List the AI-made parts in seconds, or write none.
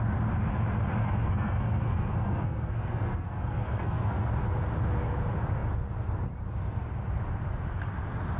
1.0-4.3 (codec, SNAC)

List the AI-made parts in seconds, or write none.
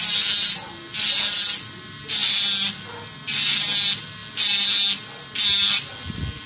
none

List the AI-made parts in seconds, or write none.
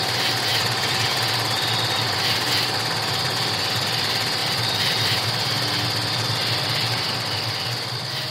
4.4-5.0 (vocoder, BigVGAN v2)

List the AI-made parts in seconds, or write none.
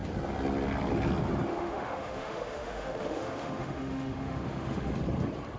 1.5-4.9 (autoencoder, DAC-VAE)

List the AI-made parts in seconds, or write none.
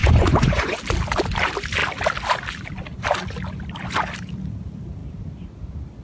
0.0-0.8 (vocoder, Vocos)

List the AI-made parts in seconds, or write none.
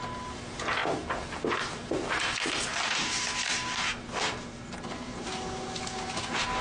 none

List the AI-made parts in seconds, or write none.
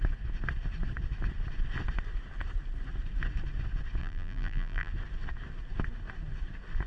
4.0-4.9 (vocoder, BigVGAN v2)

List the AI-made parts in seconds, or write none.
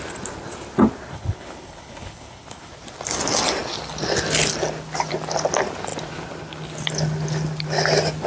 1.1-2.7 (codec, HILCodec)